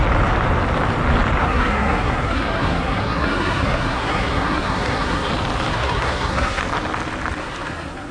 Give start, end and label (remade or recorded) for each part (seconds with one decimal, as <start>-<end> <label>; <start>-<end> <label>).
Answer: 0.0-1.4 recorded; 1.4-5.3 remade; 5.3-5.7 recorded; 5.7-6.6 remade; 6.6-7.4 recorded; 7.4-8.1 remade